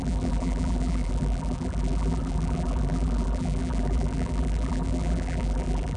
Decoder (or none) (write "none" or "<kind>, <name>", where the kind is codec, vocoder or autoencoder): vocoder, BigVGAN v2